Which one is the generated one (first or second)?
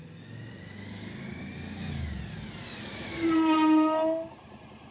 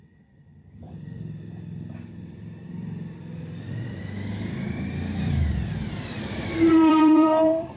second